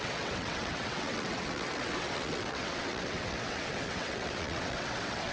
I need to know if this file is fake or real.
fake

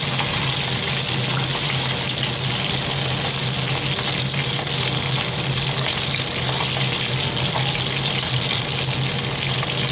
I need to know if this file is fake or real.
real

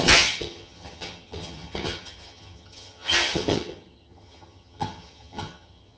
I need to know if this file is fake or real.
fake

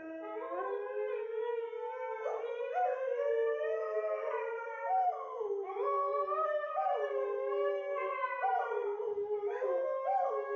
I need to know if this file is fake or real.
real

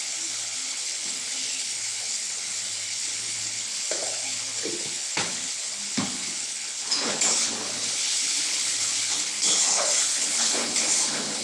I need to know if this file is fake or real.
fake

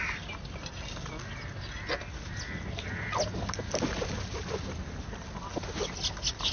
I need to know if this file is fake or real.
real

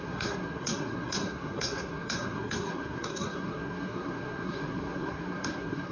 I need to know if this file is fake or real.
fake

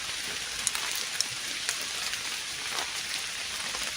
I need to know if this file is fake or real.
real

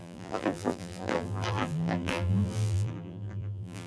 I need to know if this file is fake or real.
fake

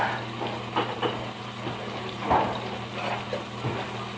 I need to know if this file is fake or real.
real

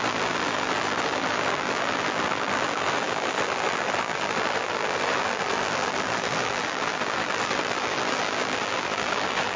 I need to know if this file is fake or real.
fake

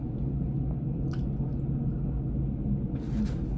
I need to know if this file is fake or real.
real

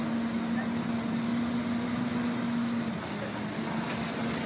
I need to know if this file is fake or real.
real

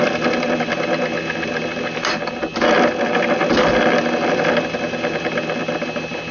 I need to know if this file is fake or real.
real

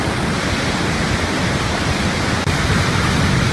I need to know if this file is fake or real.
real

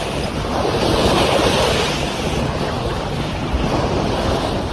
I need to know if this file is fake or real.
fake